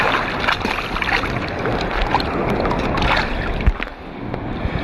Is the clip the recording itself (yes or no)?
yes